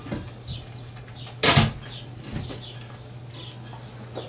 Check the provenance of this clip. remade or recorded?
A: recorded